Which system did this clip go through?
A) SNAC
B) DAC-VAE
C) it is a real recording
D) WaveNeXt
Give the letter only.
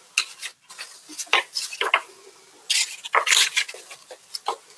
C